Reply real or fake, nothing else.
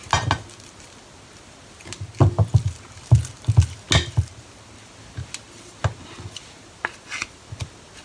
real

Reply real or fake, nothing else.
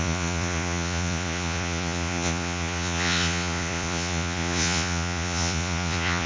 fake